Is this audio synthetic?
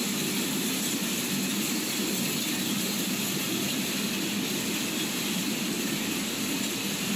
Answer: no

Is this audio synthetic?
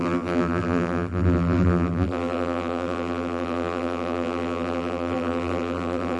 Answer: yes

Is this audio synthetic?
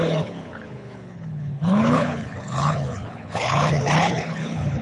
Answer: yes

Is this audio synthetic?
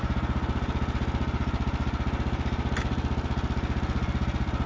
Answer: no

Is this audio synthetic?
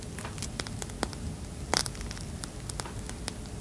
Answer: no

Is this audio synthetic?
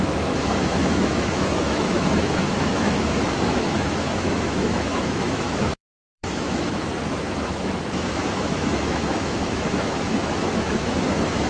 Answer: yes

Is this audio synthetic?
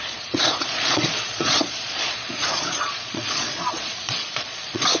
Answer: yes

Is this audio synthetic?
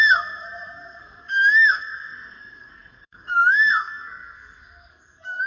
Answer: yes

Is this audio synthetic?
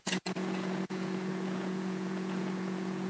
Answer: yes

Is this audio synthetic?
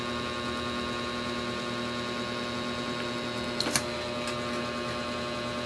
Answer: no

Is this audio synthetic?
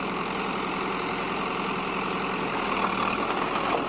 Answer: no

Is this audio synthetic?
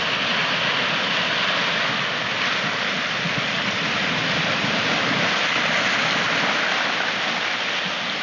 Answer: no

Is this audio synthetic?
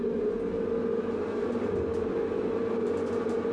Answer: no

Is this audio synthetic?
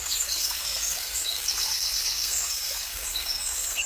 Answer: yes